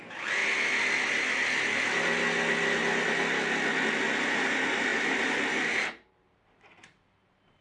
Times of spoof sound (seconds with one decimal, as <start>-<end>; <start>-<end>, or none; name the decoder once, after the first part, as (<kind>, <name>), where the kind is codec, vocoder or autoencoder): 0.0-0.4 (vocoder, BigVGAN v2); 4.2-7.6